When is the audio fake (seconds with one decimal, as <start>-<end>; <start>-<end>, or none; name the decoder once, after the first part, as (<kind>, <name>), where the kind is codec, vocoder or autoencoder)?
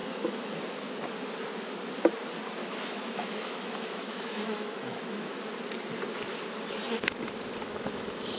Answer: 0.0-0.6 (autoencoder, DAC-VAE); 2.6-5.4; 7.6-8.4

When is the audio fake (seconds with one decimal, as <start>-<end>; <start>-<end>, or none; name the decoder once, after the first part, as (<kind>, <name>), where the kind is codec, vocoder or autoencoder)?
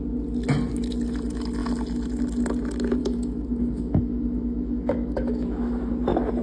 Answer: 3.0-5.9 (autoencoder, DAC-VAE)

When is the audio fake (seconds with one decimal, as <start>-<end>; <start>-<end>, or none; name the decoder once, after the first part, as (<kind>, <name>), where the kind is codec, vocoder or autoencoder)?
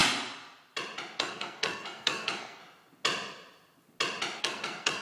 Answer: 1.2-2.6 (codec, SNAC); 4.4-5.0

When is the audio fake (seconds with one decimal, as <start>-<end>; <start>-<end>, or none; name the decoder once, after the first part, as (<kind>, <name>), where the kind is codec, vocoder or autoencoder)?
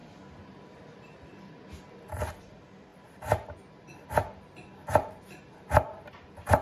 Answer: none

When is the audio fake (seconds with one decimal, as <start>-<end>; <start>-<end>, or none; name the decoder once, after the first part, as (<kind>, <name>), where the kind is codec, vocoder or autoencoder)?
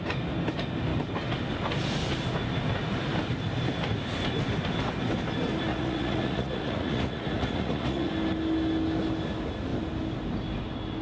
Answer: 5.7-8.1 (vocoder, Vocos)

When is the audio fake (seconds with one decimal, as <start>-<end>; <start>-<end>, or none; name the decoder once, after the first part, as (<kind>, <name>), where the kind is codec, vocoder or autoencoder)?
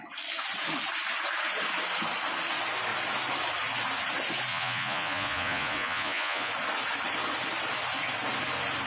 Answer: 4.5-6.5 (vocoder, Vocos)